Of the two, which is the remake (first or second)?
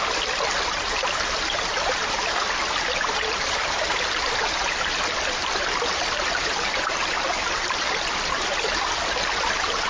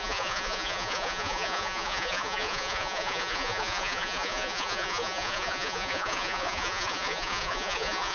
second